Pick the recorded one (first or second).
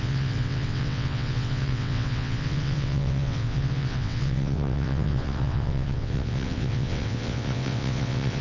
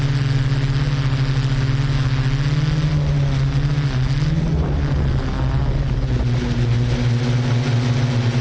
second